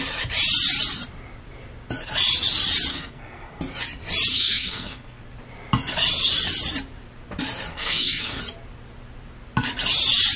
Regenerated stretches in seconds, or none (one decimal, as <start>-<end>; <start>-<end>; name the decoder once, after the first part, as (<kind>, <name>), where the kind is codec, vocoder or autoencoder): 2.9-3.6 (codec, SNAC); 4.3-5.2; 7.7-8.4